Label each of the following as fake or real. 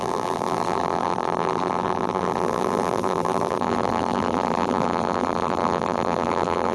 fake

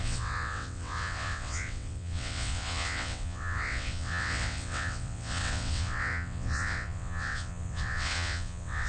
fake